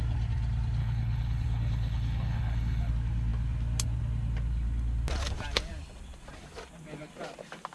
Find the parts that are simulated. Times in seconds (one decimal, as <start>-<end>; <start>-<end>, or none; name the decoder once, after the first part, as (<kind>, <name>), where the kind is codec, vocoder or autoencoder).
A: 0.8-2.9 (codec, HILCodec)